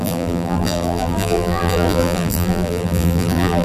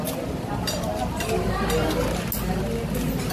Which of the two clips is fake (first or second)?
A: first